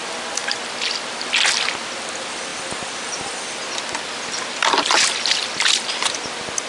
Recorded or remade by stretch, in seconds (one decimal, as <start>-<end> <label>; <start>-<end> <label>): 0.0-6.7 recorded